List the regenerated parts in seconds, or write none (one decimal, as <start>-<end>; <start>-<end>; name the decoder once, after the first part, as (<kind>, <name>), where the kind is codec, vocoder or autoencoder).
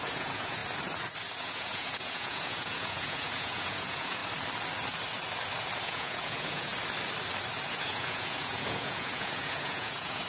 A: 0.0-0.6 (vocoder, Vocos); 1.4-4.2; 5.8-6.7; 7.7-10.3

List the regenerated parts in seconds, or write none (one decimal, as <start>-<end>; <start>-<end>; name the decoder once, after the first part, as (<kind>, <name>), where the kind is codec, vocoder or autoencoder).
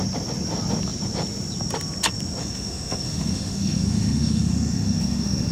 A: 2.4-5.5 (autoencoder, DAC-VAE)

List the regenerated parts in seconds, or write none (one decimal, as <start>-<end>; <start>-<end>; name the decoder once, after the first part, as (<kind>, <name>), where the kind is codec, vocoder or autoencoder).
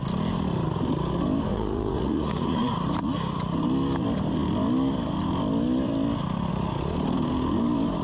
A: 1.5-2.7 (vocoder, Vocos)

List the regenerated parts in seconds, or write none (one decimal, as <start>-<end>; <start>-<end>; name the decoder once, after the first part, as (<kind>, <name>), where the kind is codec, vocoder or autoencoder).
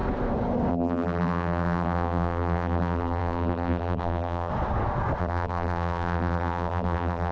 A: 0.7-4.5 (vocoder, BigVGAN v2); 5.2-7.3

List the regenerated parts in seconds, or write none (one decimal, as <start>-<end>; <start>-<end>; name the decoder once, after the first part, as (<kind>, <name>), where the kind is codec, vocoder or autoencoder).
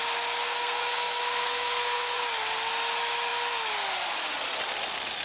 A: 0.4-2.2 (codec, SNAC)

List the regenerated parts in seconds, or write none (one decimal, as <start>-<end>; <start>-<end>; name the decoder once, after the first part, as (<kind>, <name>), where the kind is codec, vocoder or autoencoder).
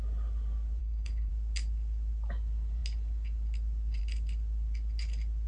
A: 0.8-1.3 (codec, HILCodec)